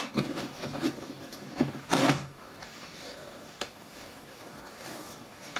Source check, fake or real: fake